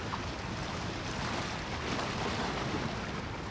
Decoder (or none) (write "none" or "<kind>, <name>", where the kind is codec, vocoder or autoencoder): none